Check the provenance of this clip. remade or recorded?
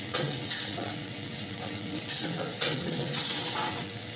remade